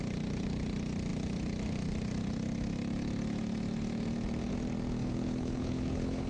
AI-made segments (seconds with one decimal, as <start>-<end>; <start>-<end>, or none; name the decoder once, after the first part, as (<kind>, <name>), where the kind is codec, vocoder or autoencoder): 5.0-6.3 (codec, HILCodec)